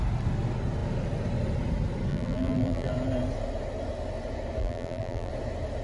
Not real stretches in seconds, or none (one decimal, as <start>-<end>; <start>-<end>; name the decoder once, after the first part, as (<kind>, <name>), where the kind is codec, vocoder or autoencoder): 2.1-2.9 (vocoder, BigVGAN v2); 4.6-5.3